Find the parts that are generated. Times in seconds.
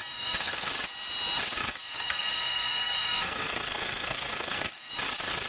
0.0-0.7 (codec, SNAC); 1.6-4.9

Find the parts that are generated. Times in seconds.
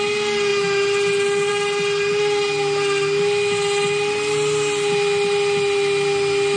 none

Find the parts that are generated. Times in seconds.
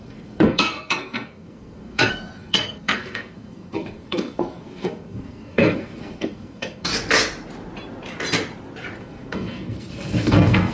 0.0-6.9 (codec, SNAC); 9.0-10.7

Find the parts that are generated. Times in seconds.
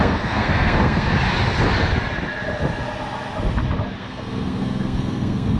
0.0-1.1 (codec, SNAC); 4.0-5.6